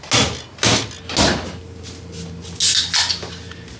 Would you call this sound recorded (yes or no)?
yes